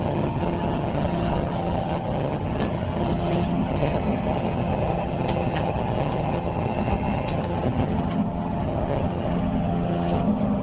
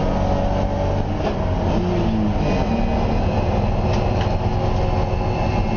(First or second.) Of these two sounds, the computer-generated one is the first